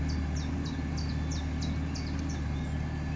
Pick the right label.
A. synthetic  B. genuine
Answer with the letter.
B